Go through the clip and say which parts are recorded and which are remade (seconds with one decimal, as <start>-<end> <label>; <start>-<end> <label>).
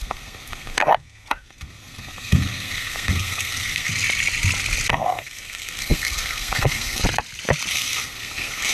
0.0-3.9 remade; 3.9-4.9 recorded; 4.9-7.0 remade; 7.0-7.7 recorded; 7.7-8.7 remade